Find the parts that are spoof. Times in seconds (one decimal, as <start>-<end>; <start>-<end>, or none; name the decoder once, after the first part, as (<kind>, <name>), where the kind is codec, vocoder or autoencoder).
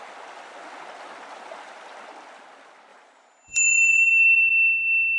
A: 2.9-4.5 (vocoder, BigVGAN v2)